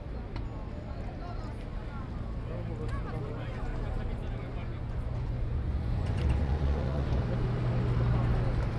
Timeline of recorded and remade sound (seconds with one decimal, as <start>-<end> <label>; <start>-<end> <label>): 0.0-4.4 recorded; 4.4-7.2 remade; 7.2-8.8 recorded